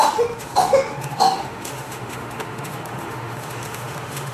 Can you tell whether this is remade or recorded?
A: remade